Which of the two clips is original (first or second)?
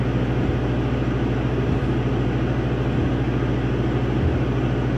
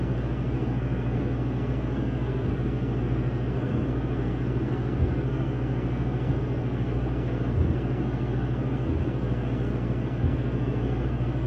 first